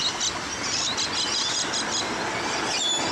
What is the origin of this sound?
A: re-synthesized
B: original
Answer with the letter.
B